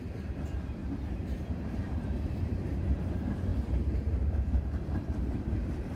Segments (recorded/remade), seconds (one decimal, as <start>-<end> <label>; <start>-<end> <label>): 0.0-6.0 remade